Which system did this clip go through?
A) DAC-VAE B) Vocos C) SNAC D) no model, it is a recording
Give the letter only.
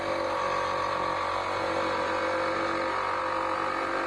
D